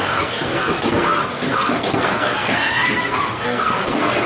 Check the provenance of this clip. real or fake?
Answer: fake